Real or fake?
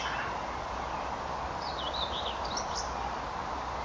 real